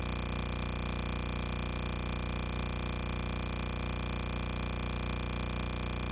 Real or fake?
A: real